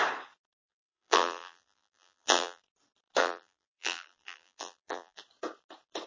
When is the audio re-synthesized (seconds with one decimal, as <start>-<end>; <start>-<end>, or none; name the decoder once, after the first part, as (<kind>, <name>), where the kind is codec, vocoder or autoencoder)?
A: 0.6-2.6 (vocoder, BigVGAN v2); 3.2-5.2

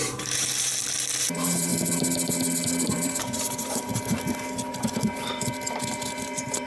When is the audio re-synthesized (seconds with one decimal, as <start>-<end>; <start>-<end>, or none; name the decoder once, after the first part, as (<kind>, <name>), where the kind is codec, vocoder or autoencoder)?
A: 0.0-0.7 (vocoder, BigVGAN v2); 1.2-1.7; 2.9-3.9; 4.7-6.7

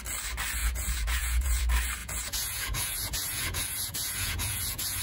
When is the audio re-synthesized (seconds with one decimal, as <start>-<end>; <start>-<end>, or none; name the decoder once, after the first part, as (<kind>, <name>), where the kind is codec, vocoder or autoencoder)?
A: 0.6-1.6 (vocoder, Vocos); 2.0-5.0

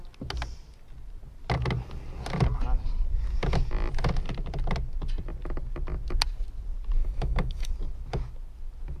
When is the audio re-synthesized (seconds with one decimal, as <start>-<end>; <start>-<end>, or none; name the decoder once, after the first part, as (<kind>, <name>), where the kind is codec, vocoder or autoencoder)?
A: 7.0-7.7 (autoencoder, DAC-VAE)

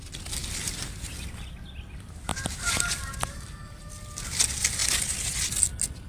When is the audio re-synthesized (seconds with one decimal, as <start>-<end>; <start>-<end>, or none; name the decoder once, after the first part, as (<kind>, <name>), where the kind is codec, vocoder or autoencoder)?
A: 0.4-1.1 (vocoder, BigVGAN v2); 2.3-3.9

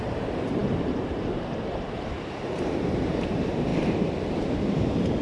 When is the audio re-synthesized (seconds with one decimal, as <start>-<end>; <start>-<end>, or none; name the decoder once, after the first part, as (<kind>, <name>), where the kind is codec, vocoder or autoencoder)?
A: 0.0-5.2 (vocoder, BigVGAN v2)